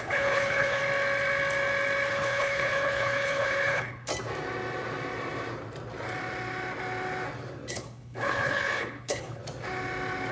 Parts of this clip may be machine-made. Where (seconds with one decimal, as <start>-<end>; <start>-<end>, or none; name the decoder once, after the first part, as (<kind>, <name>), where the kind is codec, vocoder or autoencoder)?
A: 0.0-0.8 (codec, HILCodec); 2.1-4.1; 7.7-9.4